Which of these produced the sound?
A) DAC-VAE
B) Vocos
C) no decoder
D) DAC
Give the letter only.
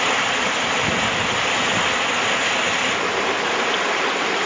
C